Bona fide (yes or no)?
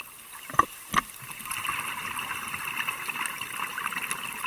yes